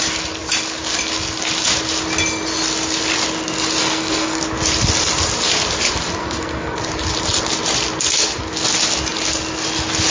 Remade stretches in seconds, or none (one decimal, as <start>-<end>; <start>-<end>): 3.8-4.4; 6.2-6.8